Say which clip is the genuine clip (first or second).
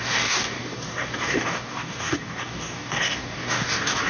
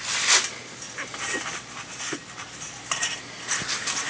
second